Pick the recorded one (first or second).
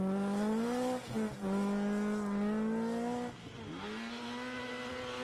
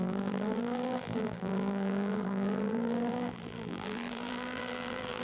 first